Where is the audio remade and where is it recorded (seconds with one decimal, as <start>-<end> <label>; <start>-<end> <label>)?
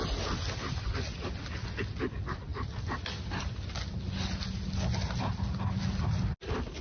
0.0-6.8 recorded